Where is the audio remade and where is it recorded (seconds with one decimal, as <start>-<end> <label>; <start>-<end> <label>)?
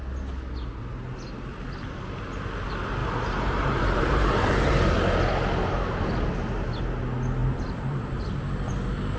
0.0-3.0 recorded; 3.0-4.8 remade; 4.8-7.4 recorded; 7.4-8.4 remade; 8.4-9.2 recorded